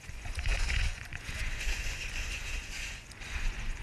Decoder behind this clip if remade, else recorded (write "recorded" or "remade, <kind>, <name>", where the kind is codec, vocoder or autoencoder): remade, vocoder, Vocos